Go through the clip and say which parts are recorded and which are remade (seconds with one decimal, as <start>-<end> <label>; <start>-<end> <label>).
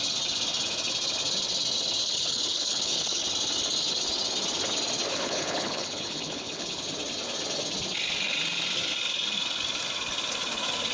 0.0-2.0 recorded; 2.0-3.2 remade; 3.2-5.1 recorded; 5.1-6.8 remade; 6.8-10.9 recorded